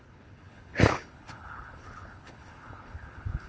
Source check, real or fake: fake